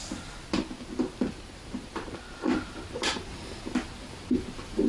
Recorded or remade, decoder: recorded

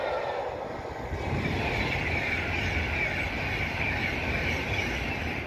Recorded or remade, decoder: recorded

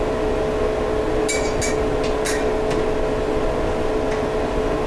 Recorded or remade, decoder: recorded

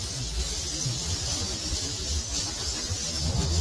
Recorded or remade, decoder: recorded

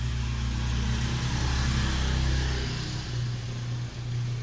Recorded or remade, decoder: recorded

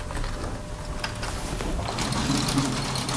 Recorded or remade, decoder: recorded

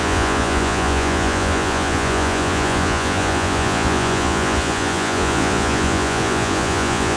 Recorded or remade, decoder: remade, vocoder, Vocos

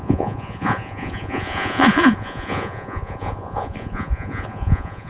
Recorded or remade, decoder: remade, vocoder, Vocos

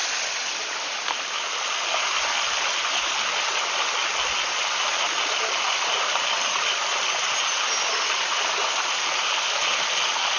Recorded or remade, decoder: recorded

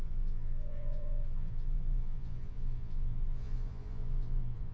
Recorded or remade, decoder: remade, vocoder, Vocos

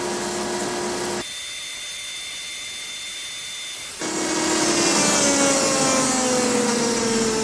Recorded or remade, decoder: recorded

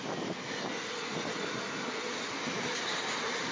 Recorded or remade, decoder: recorded